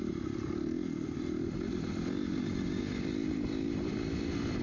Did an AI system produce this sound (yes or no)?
no